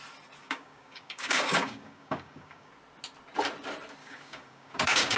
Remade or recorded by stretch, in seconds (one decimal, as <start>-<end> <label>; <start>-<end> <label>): 0.0-0.4 recorded; 0.4-2.7 remade; 2.7-4.0 recorded; 4.0-5.2 remade